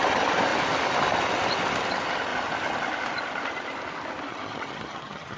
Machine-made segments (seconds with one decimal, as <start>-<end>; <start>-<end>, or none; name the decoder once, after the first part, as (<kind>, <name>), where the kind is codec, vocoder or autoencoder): 4.3-5.4 (vocoder, HiFi-GAN)